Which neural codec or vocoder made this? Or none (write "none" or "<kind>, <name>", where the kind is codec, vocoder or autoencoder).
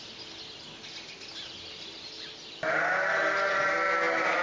none